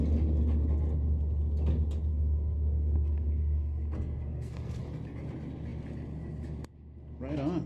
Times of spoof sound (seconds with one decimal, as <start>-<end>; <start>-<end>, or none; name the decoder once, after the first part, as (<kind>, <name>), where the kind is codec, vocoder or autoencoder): 2.1-4.8 (codec, SNAC)